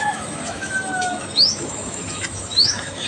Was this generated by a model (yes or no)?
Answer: yes